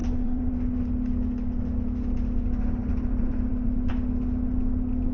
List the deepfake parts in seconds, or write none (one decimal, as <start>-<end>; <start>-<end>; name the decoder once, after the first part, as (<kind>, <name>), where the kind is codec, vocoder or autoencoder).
0.0-0.5 (vocoder, BigVGAN v2); 2.8-3.9